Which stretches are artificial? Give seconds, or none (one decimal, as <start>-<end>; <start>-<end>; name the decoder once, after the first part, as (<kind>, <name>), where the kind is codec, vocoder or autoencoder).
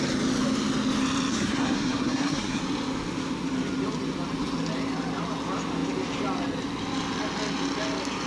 1.3-2.6 (codec, SNAC)